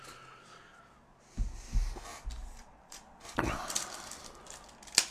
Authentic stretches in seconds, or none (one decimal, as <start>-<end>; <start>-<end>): 0.0-2.4; 3.0-5.1